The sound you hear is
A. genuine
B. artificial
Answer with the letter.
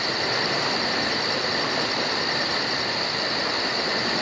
A